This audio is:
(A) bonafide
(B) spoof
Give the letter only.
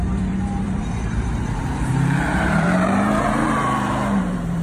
B